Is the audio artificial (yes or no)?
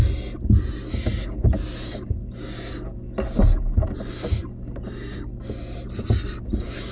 no